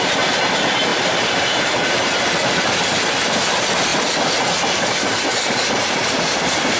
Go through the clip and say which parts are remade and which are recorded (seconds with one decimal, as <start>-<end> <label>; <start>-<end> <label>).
0.0-0.9 recorded; 0.9-1.6 remade; 1.6-6.8 recorded